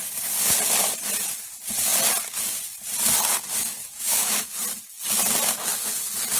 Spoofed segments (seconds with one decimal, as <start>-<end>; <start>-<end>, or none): 3.8-4.6